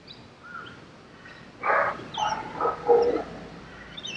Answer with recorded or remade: recorded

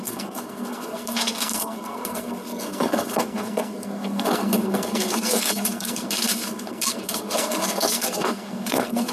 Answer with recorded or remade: remade